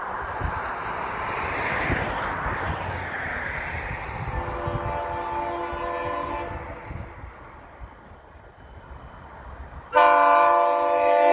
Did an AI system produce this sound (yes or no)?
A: no